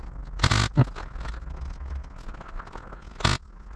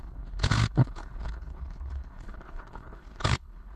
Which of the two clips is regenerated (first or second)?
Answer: second